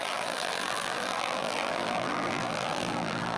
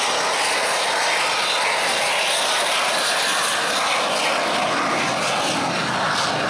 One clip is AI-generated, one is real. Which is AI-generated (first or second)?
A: first